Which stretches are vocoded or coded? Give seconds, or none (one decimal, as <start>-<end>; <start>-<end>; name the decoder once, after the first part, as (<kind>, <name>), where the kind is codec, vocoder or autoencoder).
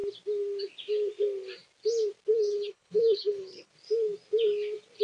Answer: 2.3-3.7 (codec, HILCodec)